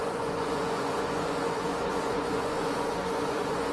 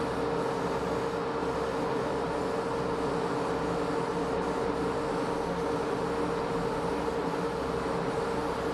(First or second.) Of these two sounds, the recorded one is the second